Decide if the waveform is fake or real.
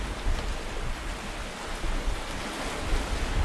real